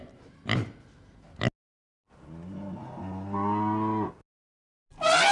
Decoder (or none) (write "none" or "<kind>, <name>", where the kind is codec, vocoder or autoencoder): none